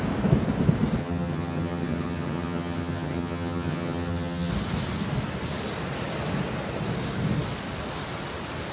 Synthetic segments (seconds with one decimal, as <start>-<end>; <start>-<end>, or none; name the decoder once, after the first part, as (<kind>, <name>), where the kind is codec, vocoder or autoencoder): 1.0-4.5 (vocoder, HiFi-GAN)